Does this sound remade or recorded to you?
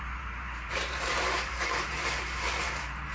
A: remade